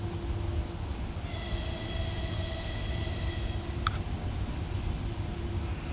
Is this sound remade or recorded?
recorded